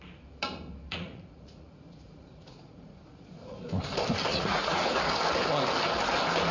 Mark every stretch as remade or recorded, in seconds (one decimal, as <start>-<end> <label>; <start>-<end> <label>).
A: 0.0-0.9 recorded; 0.9-3.6 remade; 3.6-4.3 recorded; 4.3-5.0 remade; 5.0-6.5 recorded

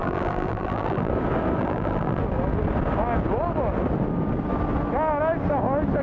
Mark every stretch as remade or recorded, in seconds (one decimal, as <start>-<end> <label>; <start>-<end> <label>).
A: 0.0-1.1 remade; 1.1-1.6 recorded; 1.6-2.2 remade; 2.2-6.0 recorded

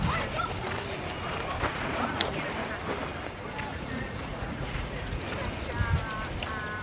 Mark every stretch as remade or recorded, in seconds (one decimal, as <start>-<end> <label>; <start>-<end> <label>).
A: 0.0-1.7 recorded; 1.7-2.4 remade; 2.4-3.7 recorded; 3.7-5.2 remade; 5.2-6.8 recorded

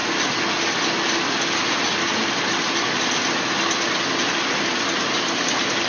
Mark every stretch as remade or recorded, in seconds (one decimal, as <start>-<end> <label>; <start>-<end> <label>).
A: 0.0-5.9 recorded

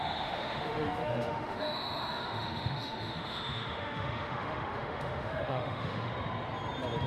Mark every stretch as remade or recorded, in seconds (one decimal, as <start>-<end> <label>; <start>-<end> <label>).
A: 0.0-6.1 remade; 6.1-7.1 recorded

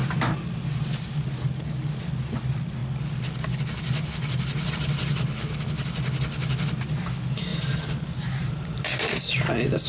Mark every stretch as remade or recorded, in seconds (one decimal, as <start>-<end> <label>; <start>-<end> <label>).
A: 0.0-7.5 recorded; 7.5-9.5 remade; 9.5-9.9 recorded

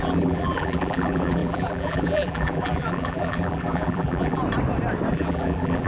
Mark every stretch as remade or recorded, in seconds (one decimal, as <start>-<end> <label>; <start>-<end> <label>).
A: 0.0-4.4 remade; 4.4-5.1 recorded; 5.1-5.9 remade